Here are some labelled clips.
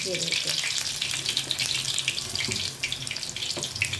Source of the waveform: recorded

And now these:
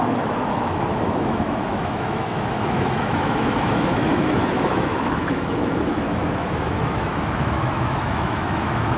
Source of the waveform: remade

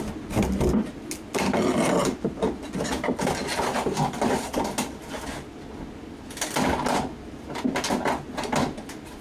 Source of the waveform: recorded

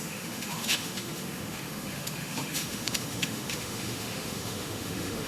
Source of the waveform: remade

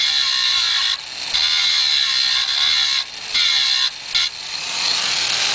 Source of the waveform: recorded